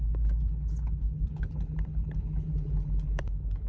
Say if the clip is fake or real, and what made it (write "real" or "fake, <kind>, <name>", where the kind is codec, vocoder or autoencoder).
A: fake, codec, HILCodec